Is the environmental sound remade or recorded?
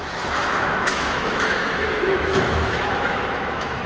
remade